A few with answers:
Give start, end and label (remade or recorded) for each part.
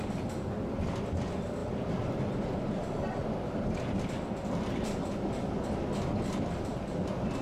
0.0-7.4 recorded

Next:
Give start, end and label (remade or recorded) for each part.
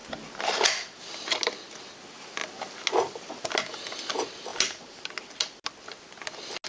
0.0-6.7 recorded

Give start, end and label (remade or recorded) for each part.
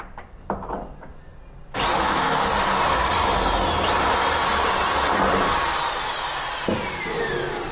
0.0-1.9 recorded; 1.9-2.5 remade; 2.5-7.7 recorded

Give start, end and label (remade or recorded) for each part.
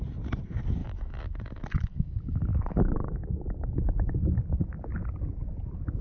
0.0-0.8 recorded; 0.8-4.1 remade; 4.1-6.0 recorded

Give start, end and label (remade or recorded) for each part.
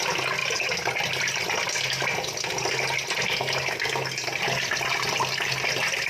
0.0-6.1 recorded